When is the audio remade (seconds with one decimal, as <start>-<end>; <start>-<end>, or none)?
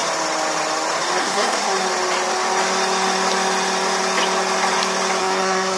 1.2-1.7; 5.2-5.8